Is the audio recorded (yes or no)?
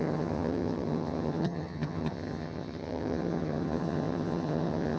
no